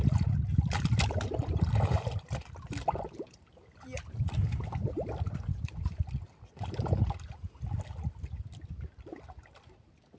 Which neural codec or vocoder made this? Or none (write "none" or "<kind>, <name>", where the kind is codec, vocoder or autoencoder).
none